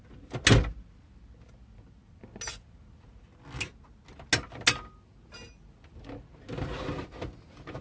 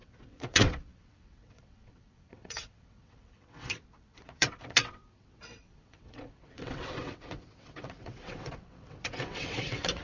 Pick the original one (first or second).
first